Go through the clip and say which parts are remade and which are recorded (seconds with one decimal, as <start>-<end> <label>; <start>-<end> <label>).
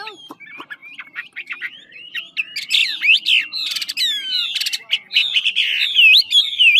0.0-0.8 recorded; 0.8-2.2 remade; 2.2-5.2 recorded; 5.2-5.8 remade; 5.8-6.8 recorded